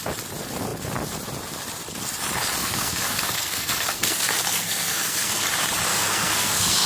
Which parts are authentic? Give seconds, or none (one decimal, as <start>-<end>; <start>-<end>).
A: 0.0-2.6; 5.4-5.9